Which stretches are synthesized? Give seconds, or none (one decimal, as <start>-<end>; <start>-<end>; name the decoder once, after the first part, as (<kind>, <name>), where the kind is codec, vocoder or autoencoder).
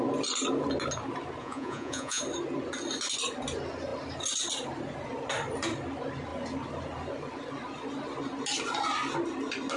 1.4-2.2 (vocoder, Vocos)